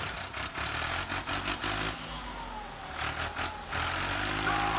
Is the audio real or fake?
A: real